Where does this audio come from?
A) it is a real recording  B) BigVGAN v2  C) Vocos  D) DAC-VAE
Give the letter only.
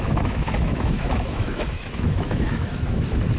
D